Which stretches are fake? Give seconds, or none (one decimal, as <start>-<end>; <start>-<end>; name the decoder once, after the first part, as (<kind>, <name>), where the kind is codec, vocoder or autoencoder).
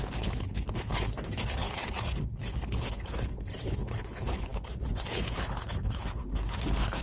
0.0-7.0 (codec, HILCodec)